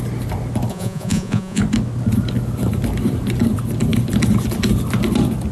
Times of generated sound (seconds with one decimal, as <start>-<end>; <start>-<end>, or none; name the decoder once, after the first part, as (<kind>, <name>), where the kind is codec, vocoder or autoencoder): 0.7-1.6 (vocoder, Vocos)